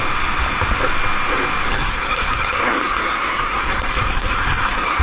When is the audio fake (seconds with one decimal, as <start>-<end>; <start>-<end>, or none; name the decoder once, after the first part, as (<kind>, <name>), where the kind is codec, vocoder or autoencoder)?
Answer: 1.7-5.0 (codec, SNAC)